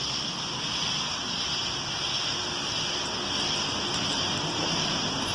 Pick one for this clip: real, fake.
real